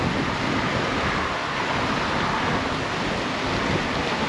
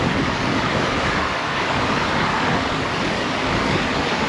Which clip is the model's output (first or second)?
second